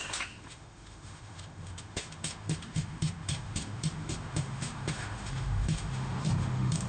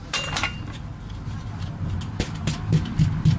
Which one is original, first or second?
second